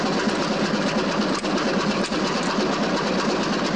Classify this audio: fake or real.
real